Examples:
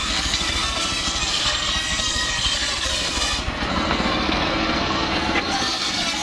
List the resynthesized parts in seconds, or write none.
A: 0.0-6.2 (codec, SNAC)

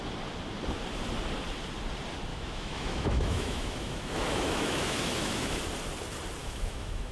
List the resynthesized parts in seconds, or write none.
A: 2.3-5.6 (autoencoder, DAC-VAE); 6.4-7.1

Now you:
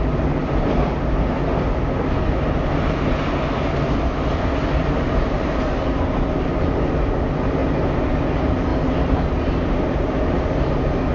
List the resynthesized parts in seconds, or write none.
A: none

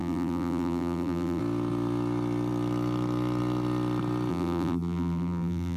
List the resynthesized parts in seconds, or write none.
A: 0.0-1.4 (vocoder, BigVGAN v2); 4.3-5.8

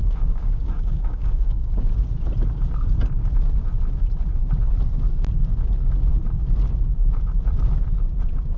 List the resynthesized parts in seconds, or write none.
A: 0.0-1.9 (codec, DAC)